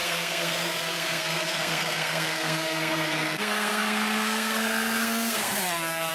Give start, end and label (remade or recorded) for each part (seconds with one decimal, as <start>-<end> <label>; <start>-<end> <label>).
0.0-6.1 remade